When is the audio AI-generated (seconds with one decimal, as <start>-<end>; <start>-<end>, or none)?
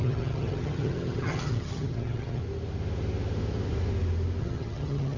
0.0-2.4; 4.4-5.2